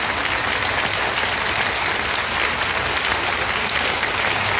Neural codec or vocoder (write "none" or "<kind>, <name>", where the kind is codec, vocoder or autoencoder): none